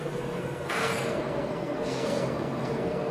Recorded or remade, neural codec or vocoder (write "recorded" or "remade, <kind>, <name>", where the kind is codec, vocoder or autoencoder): remade, codec, SNAC